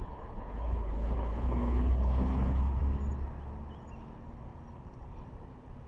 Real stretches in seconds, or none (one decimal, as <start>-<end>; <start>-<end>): 2.8-5.9